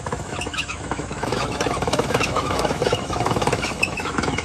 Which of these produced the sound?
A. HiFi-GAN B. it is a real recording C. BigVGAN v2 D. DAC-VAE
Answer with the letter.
D